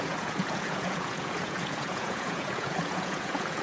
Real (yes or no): no